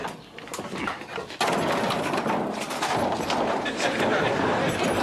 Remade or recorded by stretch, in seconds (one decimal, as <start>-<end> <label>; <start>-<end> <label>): 0.0-5.0 recorded